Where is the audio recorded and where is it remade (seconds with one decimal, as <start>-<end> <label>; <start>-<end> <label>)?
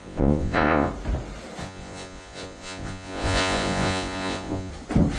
0.0-0.9 remade; 0.9-1.6 recorded; 1.6-4.7 remade; 4.7-5.2 recorded